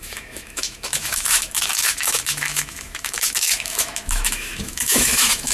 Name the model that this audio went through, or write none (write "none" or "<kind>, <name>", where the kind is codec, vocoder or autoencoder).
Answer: autoencoder, DAC-VAE